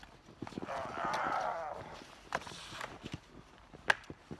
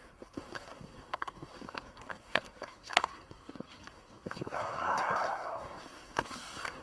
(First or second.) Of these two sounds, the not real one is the second